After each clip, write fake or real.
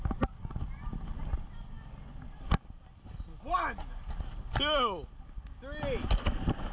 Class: real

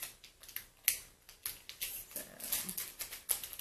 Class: real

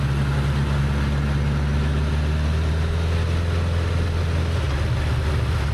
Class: real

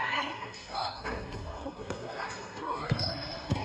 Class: fake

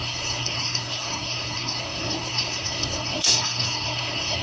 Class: fake